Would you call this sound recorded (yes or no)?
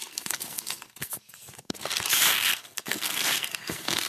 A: no